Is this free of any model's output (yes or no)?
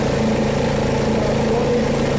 yes